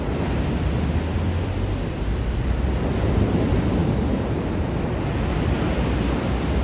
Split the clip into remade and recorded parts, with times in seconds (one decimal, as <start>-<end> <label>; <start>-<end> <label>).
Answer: 0.0-6.6 recorded